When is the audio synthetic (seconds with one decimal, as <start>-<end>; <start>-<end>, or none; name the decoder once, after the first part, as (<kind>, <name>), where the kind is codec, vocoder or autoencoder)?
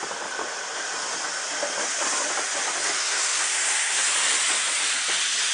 3.0-4.0 (codec, SNAC)